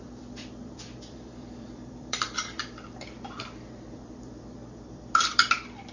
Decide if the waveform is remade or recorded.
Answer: remade